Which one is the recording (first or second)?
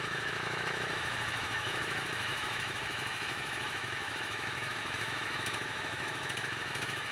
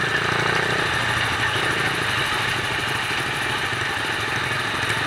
second